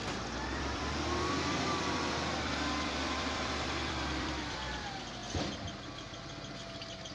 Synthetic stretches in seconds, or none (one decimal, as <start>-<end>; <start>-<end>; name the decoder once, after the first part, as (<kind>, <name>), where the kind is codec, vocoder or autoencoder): 0.0-5.2 (vocoder, BigVGAN v2)